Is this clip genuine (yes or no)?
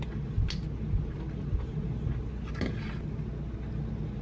yes